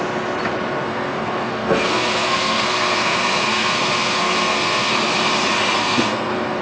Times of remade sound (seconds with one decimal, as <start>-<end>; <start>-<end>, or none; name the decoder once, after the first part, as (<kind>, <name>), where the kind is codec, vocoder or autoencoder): 0.9-4.9 (codec, SNAC); 5.8-6.6